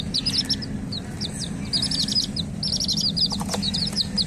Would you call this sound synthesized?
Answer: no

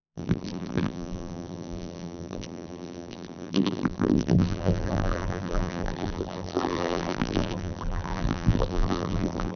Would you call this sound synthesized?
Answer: yes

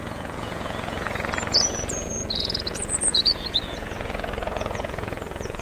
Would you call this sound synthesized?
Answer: yes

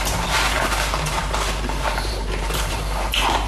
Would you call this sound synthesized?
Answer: yes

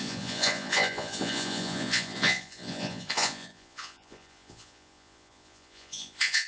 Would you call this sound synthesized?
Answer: yes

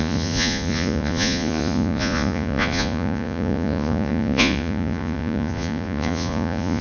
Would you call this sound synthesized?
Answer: yes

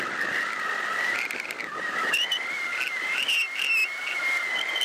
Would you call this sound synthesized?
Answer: no